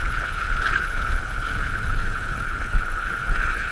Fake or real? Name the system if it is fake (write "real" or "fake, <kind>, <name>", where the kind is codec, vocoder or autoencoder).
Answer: fake, codec, HILCodec